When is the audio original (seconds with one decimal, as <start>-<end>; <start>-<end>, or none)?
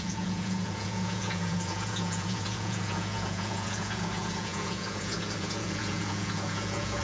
none